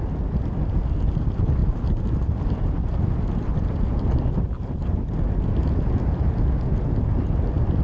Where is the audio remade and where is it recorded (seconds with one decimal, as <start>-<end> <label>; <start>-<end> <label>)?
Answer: 0.0-7.8 recorded